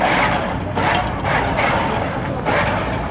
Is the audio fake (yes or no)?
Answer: no